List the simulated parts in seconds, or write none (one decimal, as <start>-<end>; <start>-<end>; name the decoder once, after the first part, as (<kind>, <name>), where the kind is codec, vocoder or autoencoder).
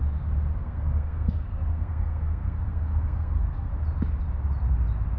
0.6-3.7 (codec, SNAC)